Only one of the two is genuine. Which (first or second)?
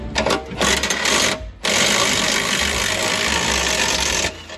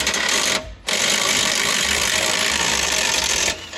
first